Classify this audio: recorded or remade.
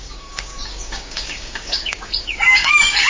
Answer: remade